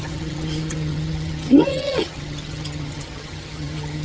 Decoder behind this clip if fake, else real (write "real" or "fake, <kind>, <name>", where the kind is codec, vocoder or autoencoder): fake, vocoder, HiFi-GAN